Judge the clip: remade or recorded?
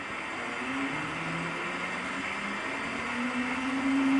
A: recorded